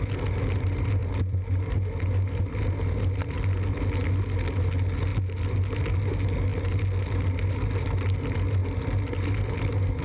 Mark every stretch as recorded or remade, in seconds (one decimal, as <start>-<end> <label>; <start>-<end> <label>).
0.0-10.0 recorded

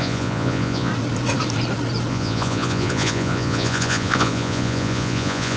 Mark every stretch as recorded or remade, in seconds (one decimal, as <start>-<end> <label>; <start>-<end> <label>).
0.0-0.9 remade; 0.9-2.1 recorded; 2.1-5.6 remade

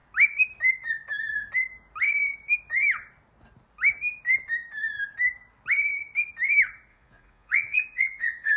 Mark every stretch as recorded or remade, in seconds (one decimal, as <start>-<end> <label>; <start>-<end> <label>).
0.0-6.9 recorded; 6.9-8.6 remade

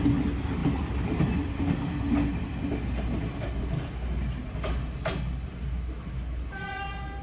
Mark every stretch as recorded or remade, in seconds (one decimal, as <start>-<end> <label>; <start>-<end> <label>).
0.0-7.2 recorded